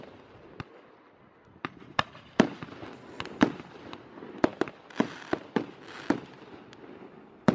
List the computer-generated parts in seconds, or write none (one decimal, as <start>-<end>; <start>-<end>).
none